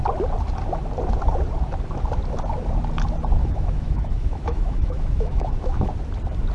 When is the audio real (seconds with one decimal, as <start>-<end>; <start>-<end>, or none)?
0.0-3.4; 5.9-6.5